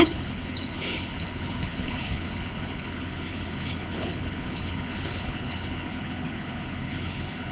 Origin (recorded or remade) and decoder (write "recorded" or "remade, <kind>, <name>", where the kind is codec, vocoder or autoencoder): remade, codec, HILCodec